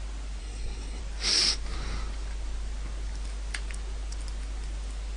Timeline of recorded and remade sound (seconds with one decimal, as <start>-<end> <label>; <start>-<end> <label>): 0.0-0.4 recorded; 0.4-1.0 remade; 1.0-5.2 recorded